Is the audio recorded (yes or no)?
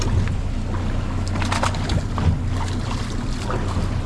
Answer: yes